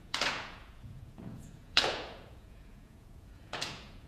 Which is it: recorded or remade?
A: remade